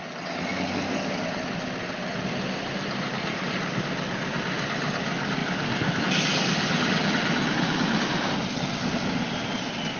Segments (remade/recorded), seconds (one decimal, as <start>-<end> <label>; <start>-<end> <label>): 0.0-0.5 recorded; 0.5-1.0 remade; 1.0-5.4 recorded; 5.4-6.0 remade; 6.0-7.0 recorded; 7.0-8.0 remade; 8.0-10.0 recorded